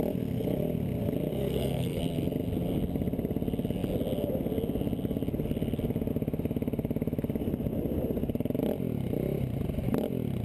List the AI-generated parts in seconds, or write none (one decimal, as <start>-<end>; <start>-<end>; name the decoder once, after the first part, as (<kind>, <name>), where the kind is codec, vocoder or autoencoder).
1.3-2.0 (codec, SNAC)